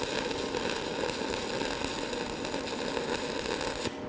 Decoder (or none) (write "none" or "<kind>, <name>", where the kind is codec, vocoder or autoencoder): none